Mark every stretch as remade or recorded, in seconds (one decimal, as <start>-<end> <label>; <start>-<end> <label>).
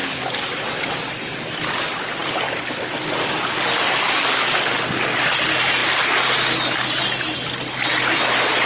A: 0.0-1.8 remade; 1.8-2.2 recorded; 2.2-3.4 remade; 3.4-8.7 recorded